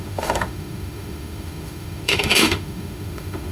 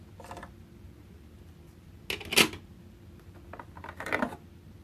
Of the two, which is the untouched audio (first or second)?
second